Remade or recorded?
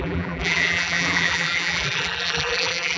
remade